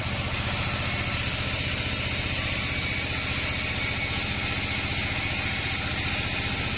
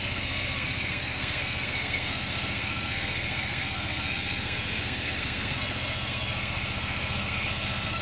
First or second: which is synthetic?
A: second